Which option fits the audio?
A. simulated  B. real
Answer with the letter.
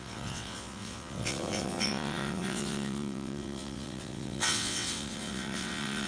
A